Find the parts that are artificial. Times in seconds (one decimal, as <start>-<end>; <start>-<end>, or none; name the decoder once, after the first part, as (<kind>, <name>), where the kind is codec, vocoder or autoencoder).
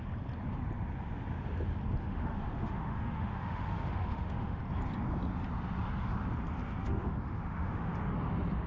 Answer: 2.0-4.6 (autoencoder, DAC-VAE); 6.8-7.9